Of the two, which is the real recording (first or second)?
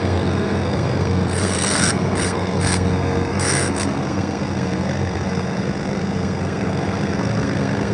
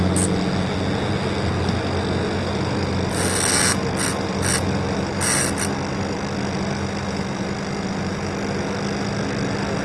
second